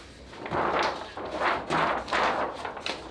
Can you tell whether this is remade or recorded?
recorded